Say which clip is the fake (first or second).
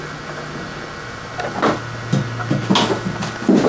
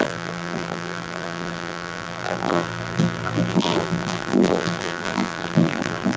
second